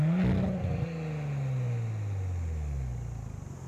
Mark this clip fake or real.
real